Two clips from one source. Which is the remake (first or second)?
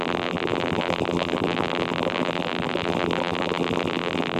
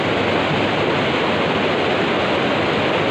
first